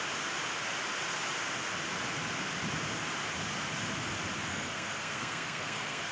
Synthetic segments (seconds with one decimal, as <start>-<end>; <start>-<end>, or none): 4.5-6.1